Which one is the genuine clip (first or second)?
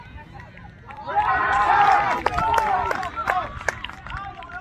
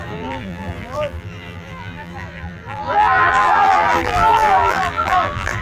first